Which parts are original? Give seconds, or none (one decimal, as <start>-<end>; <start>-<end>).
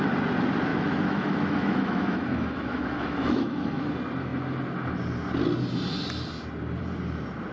0.0-0.7; 3.9-7.5